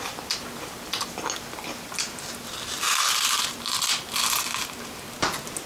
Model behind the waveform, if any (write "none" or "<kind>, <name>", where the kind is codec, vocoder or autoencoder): none